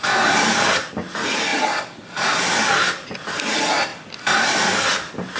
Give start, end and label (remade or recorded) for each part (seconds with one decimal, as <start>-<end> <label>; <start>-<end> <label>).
0.0-5.4 recorded